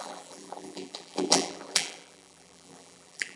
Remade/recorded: remade